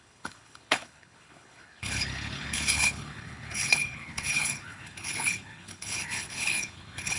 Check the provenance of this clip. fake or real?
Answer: fake